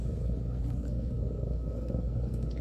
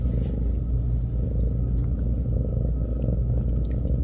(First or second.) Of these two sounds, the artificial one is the first